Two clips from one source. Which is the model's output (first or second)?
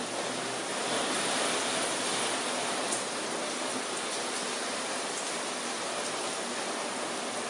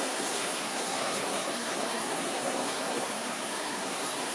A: second